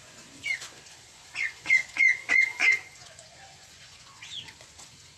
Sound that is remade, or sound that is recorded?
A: remade